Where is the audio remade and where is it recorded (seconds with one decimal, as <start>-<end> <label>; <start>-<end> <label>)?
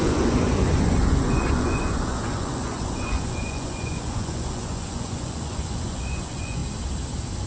0.0-6.6 remade; 6.6-7.5 recorded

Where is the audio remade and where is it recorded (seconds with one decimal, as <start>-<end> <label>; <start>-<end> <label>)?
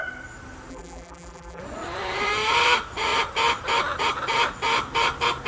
0.0-0.7 recorded; 0.7-1.6 remade; 1.6-5.5 recorded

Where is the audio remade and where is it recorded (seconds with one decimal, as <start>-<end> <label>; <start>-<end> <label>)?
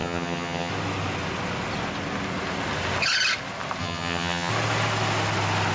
0.0-0.7 remade; 0.7-3.8 recorded; 3.8-4.5 remade; 4.5-5.7 recorded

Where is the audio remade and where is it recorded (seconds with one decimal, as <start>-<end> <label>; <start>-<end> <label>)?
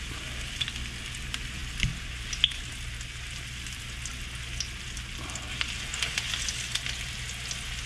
0.0-7.9 recorded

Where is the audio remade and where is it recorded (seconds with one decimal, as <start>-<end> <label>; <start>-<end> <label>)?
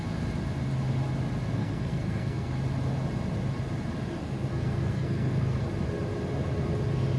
0.0-1.6 recorded; 1.6-2.5 remade; 2.5-4.2 recorded; 4.2-5.7 remade; 5.7-7.2 recorded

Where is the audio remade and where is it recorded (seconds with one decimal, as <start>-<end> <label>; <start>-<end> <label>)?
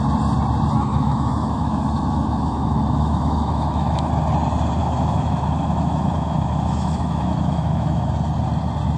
0.0-0.9 recorded; 0.9-4.1 remade; 4.1-4.8 recorded; 4.8-8.1 remade; 8.1-9.0 recorded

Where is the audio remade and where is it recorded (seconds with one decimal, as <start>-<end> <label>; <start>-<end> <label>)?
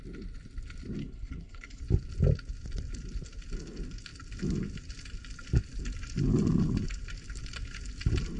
0.0-1.0 recorded; 1.0-1.8 remade; 1.8-8.4 recorded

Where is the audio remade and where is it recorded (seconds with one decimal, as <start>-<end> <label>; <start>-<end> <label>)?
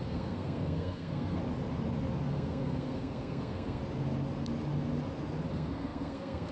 0.0-1.4 remade; 1.4-2.3 recorded; 2.3-3.8 remade; 3.8-5.5 recorded; 5.5-6.5 remade